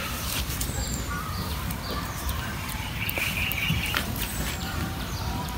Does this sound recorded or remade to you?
remade